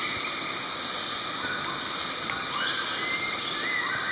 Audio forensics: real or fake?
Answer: real